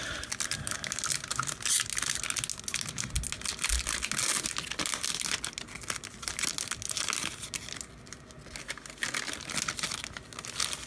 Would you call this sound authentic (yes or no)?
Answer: yes